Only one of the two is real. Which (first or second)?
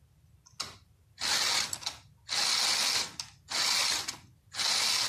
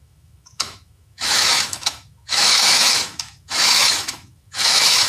first